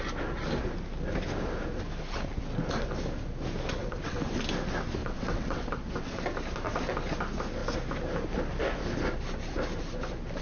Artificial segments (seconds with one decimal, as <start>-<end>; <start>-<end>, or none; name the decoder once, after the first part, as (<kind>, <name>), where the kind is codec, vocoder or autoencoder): 3.8-4.4 (vocoder, WaveNeXt); 5.0-6.2